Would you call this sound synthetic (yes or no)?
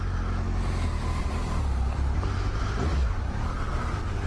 no